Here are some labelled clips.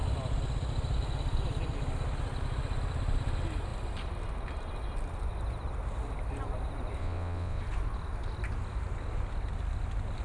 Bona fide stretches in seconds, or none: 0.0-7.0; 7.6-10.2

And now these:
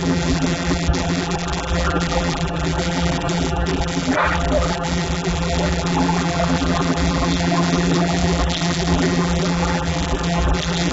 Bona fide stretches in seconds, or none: none

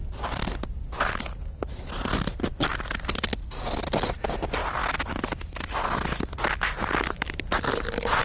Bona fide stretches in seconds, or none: 0.0-8.2